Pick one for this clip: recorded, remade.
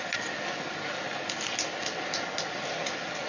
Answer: recorded